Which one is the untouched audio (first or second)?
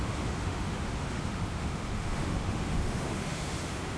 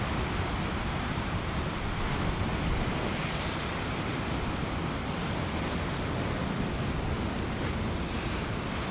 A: second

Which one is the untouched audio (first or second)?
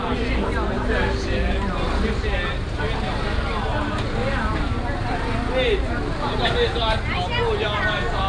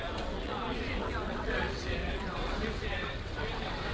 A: first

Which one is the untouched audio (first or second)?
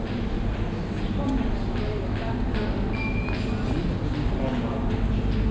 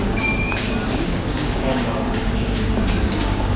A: first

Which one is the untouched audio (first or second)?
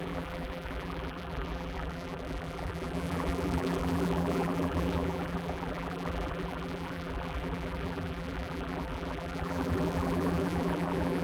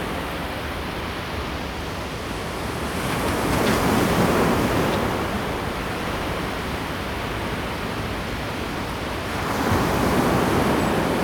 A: second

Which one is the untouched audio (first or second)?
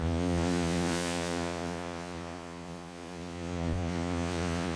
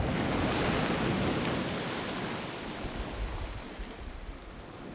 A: second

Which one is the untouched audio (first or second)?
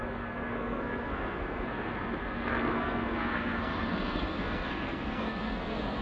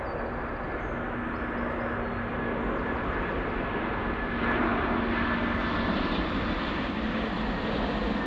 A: second